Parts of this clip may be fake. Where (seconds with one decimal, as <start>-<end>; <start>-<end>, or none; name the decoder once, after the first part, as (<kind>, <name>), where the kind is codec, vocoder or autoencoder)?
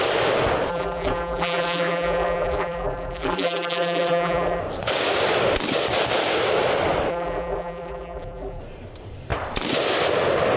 0.7-4.6 (vocoder, BigVGAN v2); 7.1-8.6